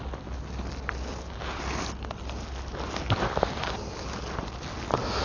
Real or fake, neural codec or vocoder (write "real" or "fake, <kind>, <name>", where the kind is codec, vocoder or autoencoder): real